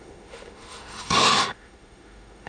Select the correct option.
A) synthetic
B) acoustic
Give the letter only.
A